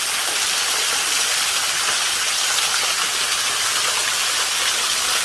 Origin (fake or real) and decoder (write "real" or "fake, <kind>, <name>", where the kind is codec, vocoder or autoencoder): real